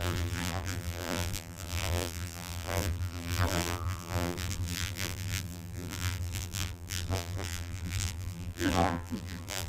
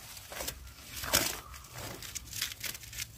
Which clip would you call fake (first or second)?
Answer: first